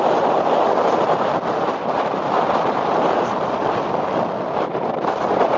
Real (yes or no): yes